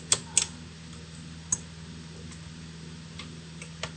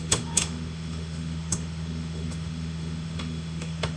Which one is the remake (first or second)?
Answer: second